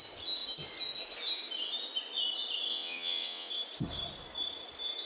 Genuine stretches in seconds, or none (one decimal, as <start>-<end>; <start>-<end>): 0.0-2.7; 3.5-5.1